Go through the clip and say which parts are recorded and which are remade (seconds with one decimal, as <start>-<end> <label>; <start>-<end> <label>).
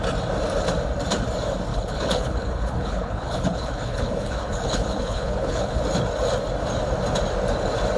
0.0-1.7 recorded; 1.7-5.8 remade; 5.8-8.0 recorded